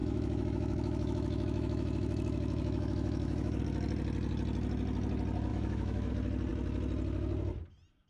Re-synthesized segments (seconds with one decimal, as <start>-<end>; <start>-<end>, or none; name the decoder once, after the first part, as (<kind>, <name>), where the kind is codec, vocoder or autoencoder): 0.0-3.6 (autoencoder, DAC-VAE); 5.5-6.1